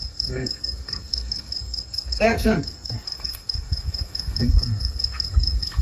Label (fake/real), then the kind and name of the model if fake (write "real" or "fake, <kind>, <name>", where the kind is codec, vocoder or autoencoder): fake, codec, SNAC